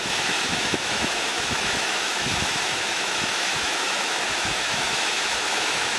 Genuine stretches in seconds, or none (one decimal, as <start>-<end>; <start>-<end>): none